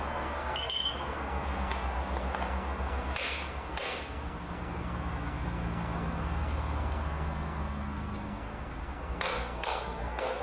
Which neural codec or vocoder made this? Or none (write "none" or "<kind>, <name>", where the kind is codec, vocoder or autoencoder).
codec, SNAC